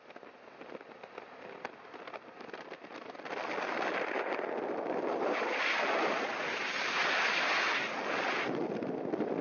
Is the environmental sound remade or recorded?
recorded